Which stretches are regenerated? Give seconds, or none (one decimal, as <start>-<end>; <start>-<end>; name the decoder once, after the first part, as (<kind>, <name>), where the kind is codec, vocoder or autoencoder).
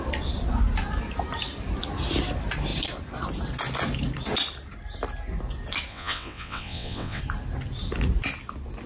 5.9-7.2 (vocoder, WaveNeXt)